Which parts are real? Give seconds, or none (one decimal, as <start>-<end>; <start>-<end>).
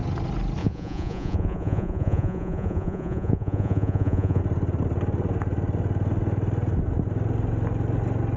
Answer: 0.0-0.6; 4.4-8.4